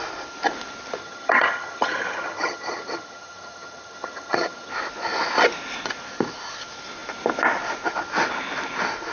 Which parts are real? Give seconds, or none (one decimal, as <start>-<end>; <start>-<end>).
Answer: 0.0-1.0; 4.7-9.1